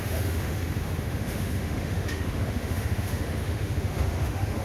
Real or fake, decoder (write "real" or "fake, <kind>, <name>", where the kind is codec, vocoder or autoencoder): fake, autoencoder, DAC-VAE